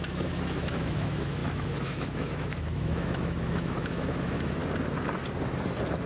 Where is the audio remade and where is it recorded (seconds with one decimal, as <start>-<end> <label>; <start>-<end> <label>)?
0.0-4.6 remade; 4.6-6.1 recorded